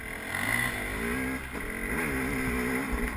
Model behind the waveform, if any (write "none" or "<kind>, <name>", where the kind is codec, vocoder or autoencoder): none